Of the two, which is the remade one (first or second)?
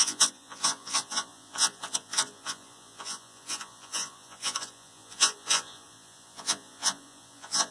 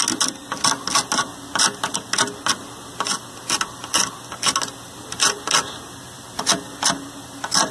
first